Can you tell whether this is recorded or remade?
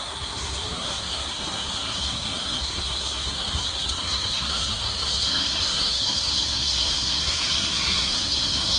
remade